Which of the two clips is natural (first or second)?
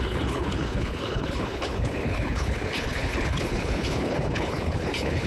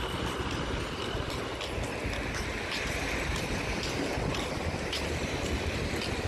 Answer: second